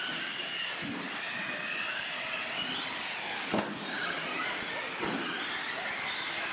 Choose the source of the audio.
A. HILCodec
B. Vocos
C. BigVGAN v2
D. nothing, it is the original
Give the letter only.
D